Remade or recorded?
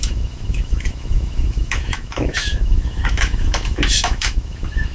remade